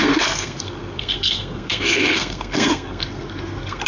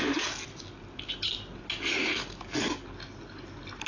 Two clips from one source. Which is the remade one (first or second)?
first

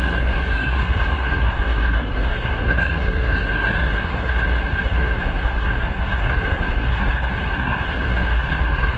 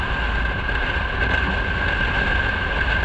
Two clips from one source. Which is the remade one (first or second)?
first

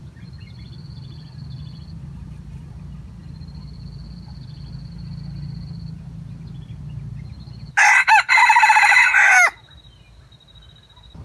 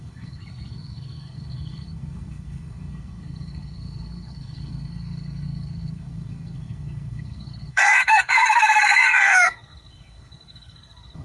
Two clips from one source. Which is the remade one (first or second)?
second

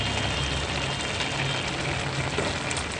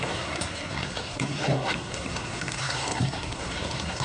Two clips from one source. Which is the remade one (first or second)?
second